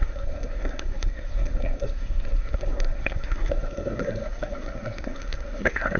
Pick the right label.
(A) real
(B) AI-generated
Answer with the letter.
B